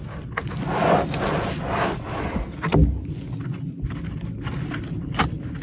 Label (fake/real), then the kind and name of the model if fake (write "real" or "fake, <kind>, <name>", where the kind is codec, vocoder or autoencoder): real